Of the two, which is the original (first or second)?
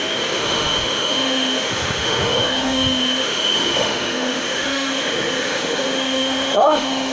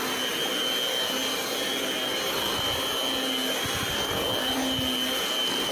second